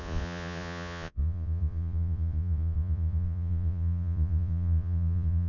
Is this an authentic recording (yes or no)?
no